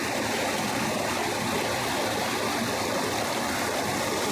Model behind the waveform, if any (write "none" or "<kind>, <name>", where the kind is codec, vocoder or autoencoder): none